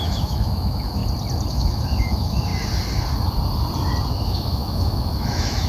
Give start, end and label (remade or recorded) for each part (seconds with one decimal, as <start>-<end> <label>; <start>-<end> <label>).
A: 0.0-1.0 remade; 1.0-1.5 recorded; 1.5-2.5 remade; 2.5-4.1 recorded; 4.1-5.7 remade